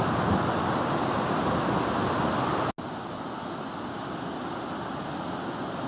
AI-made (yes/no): no